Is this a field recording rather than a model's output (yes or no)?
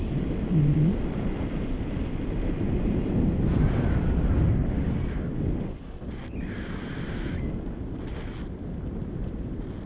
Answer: yes